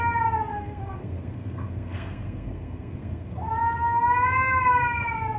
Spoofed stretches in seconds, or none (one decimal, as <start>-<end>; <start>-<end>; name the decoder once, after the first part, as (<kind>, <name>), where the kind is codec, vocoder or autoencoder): 0.5-3.5 (codec, SNAC)